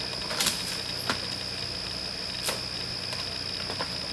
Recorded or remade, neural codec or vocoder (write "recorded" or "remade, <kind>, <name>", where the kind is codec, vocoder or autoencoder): recorded